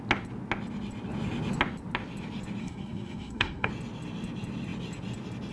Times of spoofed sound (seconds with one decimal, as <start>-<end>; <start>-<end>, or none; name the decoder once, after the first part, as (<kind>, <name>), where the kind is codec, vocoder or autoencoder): 2.6-3.7 (codec, SNAC)